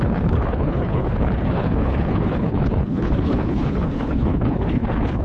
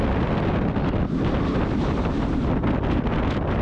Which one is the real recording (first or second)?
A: second